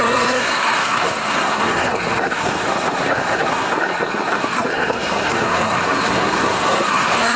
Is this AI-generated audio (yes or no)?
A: yes